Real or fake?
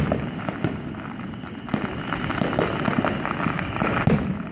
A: real